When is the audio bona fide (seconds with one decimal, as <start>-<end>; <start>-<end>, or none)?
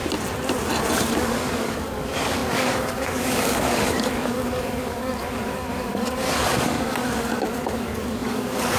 0.0-1.1